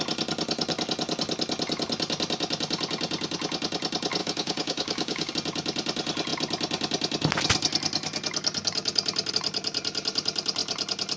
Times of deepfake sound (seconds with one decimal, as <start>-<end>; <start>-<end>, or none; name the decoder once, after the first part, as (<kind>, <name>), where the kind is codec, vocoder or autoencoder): 4.2-5.3 (codec, DAC)